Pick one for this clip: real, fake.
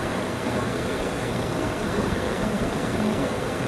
fake